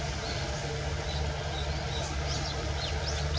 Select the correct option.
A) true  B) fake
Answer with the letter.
A